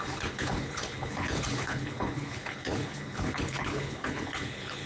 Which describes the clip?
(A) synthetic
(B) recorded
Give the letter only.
A